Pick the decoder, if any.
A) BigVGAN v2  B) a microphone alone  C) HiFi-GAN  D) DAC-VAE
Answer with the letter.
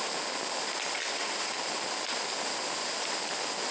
B